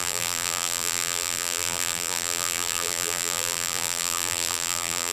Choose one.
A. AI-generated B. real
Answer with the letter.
A